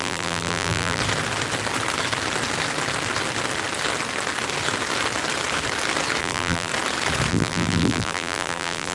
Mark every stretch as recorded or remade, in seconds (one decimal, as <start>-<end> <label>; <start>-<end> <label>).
0.0-1.0 remade; 1.0-6.2 recorded; 6.2-6.7 remade; 6.7-7.3 recorded; 7.3-8.9 remade